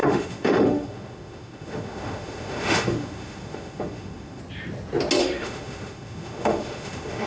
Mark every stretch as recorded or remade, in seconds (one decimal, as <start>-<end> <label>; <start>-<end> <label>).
0.0-4.4 remade; 4.4-5.2 recorded; 5.2-7.3 remade